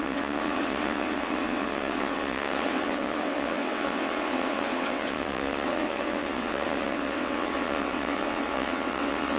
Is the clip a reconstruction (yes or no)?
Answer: yes